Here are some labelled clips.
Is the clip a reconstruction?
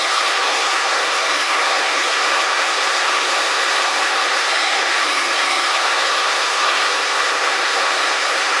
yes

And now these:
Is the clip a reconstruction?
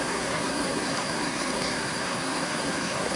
yes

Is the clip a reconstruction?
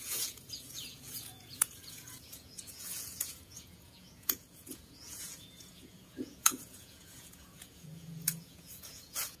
yes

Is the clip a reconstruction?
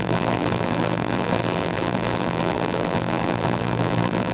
yes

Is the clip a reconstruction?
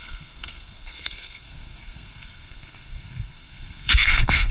yes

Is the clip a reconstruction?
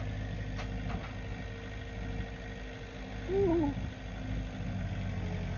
no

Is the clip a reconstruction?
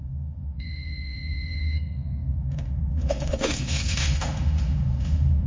yes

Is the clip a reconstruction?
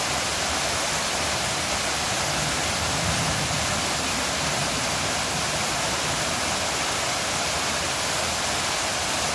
no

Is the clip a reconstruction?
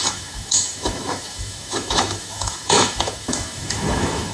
yes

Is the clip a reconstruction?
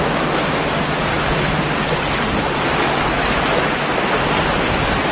no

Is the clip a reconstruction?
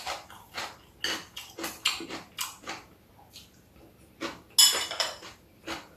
no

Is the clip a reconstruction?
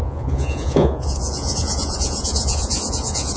yes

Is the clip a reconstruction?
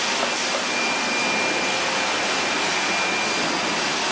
no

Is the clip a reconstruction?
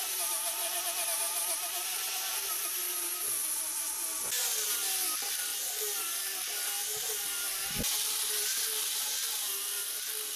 no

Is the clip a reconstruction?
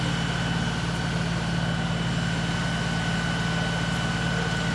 no